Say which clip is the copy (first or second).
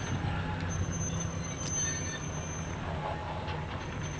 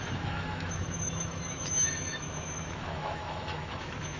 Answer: second